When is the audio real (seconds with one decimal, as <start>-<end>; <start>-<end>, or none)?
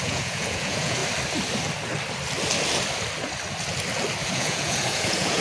1.0-4.2